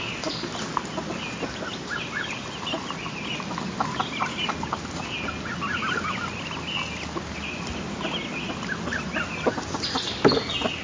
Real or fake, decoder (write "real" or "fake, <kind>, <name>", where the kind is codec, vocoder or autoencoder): real